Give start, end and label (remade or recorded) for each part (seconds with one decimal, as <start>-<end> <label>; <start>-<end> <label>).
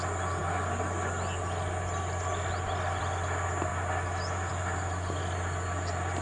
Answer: 0.0-6.2 recorded